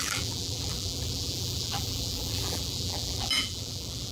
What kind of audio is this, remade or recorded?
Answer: remade